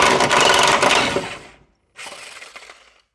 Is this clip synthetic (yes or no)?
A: no